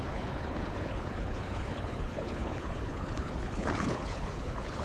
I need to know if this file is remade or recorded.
remade